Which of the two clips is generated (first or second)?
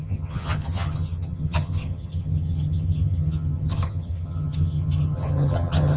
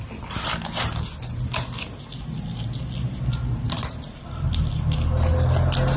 first